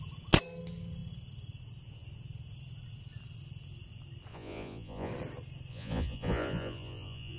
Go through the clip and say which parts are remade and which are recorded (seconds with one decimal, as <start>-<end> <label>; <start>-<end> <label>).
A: 0.0-4.3 recorded; 4.3-5.1 remade; 5.1-5.7 recorded; 5.7-7.4 remade